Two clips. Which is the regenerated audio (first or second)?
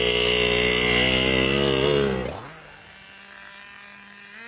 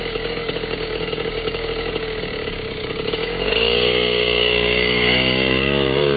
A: second